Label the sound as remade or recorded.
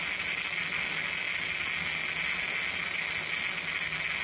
recorded